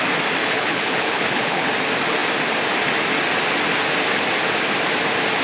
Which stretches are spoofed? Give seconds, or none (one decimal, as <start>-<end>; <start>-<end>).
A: 0.4-1.7